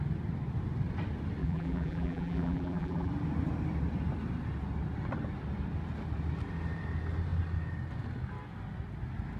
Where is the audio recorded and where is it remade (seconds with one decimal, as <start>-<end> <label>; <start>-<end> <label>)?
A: 0.0-1.4 recorded; 1.4-3.1 remade; 3.1-9.4 recorded